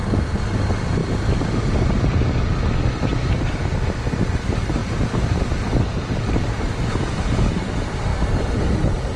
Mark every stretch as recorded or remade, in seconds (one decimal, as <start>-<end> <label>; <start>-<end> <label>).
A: 0.0-4.8 recorded; 4.8-6.7 remade; 6.7-9.2 recorded